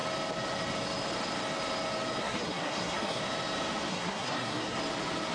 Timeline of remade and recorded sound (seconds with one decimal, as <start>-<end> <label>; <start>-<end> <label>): 0.0-2.2 recorded; 2.2-3.2 remade; 3.2-3.9 recorded; 3.9-4.8 remade; 4.8-5.3 recorded